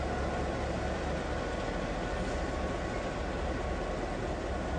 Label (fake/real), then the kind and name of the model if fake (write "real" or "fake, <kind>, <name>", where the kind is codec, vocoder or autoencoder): real